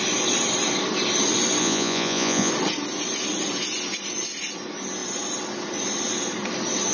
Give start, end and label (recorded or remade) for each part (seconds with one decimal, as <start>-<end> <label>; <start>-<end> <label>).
0.0-1.6 recorded; 1.6-2.5 remade; 2.5-6.9 recorded